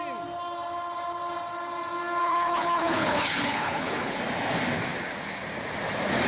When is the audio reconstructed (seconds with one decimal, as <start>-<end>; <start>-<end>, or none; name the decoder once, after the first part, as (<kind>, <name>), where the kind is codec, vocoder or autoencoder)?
2.2-4.2 (codec, HILCodec)